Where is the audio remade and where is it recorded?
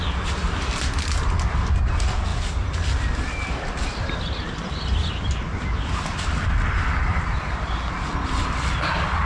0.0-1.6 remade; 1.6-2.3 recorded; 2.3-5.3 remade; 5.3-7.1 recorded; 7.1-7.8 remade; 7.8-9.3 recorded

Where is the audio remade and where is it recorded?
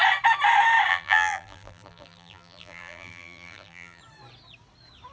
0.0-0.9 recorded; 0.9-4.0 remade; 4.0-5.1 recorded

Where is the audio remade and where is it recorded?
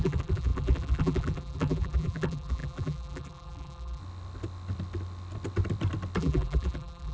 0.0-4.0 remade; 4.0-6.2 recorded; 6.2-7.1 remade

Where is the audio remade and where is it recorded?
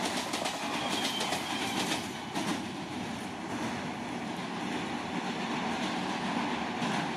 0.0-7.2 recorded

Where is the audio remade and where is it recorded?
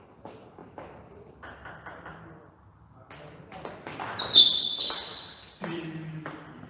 0.0-0.6 recorded; 0.6-2.5 remade; 2.5-5.1 recorded; 5.1-5.8 remade; 5.8-6.7 recorded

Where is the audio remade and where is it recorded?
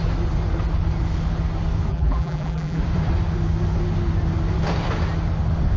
0.0-1.9 recorded; 1.9-2.8 remade; 2.8-5.8 recorded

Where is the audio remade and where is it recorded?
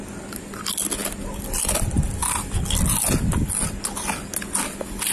0.0-5.1 recorded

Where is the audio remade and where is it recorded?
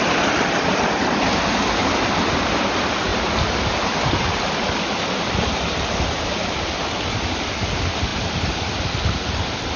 0.0-8.1 recorded; 8.1-9.0 remade; 9.0-9.8 recorded